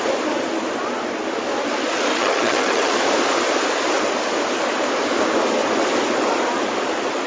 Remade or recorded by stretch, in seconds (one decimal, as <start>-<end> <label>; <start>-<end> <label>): 0.0-2.1 recorded; 2.1-2.9 remade; 2.9-7.3 recorded